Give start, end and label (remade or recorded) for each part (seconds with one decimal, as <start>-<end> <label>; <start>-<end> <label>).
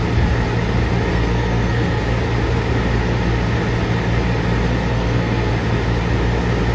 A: 0.0-1.1 recorded; 1.1-2.0 remade; 2.0-4.9 recorded; 4.9-5.5 remade; 5.5-6.7 recorded